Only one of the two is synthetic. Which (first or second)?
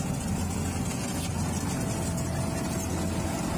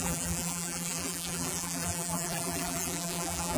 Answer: second